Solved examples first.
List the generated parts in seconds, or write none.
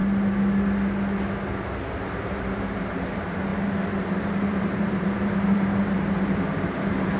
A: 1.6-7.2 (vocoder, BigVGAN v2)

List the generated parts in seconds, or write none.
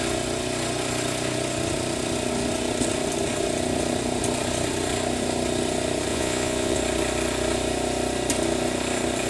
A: 6.1-6.8 (vocoder, Vocos)